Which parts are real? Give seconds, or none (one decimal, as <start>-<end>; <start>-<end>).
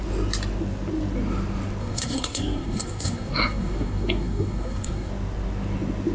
0.0-1.8; 5.1-6.1